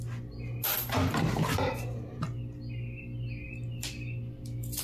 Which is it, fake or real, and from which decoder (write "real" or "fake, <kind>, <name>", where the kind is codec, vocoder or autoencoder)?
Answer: real